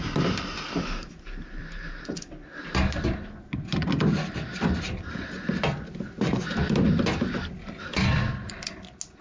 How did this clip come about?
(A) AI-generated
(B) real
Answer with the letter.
B